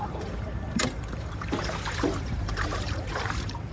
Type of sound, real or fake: fake